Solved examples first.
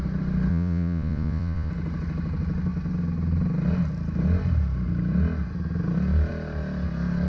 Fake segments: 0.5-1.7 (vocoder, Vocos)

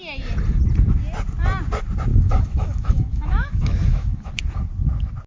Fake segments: 2.1-4.3 (autoencoder, DAC-VAE)

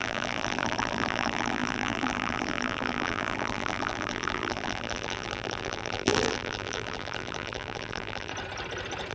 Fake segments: 0.0-8.3 (vocoder, BigVGAN v2)